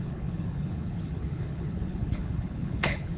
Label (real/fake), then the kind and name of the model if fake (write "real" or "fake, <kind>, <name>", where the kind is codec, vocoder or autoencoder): fake, codec, HILCodec